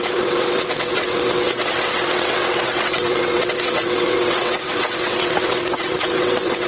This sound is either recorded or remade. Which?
remade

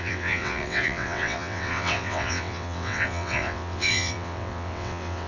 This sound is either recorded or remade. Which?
remade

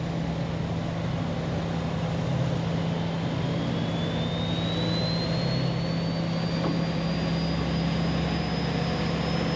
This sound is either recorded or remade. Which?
recorded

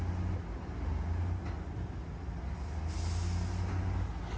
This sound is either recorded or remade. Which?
recorded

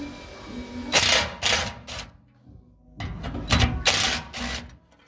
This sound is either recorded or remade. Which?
recorded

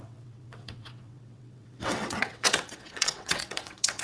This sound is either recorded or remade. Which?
remade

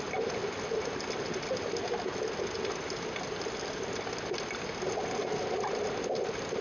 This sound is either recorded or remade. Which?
recorded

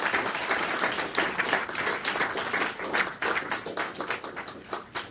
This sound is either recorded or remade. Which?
recorded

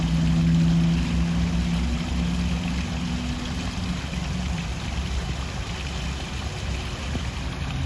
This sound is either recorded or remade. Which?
recorded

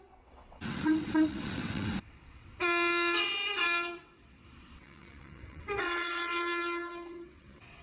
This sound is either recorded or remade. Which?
remade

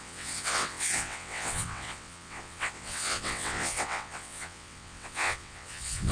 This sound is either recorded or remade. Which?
remade